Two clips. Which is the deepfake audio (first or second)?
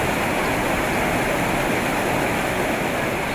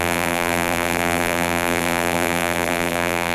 second